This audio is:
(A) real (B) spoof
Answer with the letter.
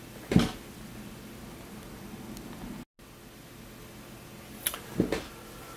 A